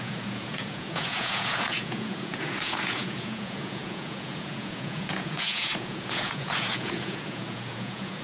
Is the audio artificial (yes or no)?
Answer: yes